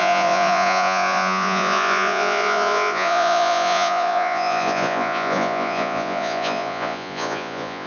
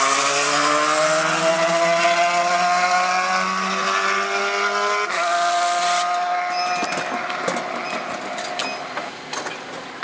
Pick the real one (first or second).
second